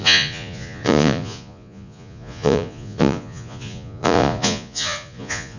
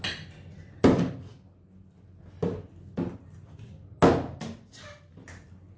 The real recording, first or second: second